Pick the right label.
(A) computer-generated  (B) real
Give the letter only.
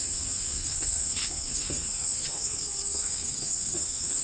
A